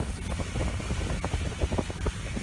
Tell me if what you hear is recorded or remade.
recorded